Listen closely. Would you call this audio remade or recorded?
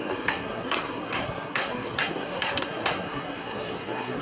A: remade